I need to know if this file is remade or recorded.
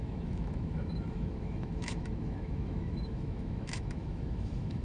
remade